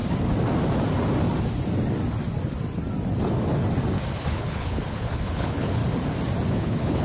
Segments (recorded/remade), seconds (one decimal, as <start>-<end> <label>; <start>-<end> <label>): 0.0-4.2 recorded; 4.2-5.8 remade; 5.8-6.5 recorded; 6.5-7.0 remade

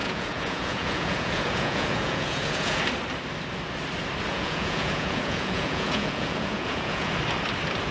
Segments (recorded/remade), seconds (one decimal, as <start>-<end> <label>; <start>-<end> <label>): 0.0-2.8 remade; 2.8-4.3 recorded; 4.3-7.1 remade; 7.1-7.9 recorded

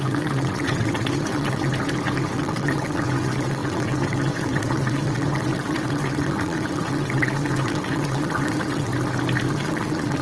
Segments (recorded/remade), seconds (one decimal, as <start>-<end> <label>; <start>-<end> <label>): 0.0-1.7 remade; 1.7-2.3 recorded; 2.3-8.9 remade; 8.9-9.5 recorded; 9.5-10.2 remade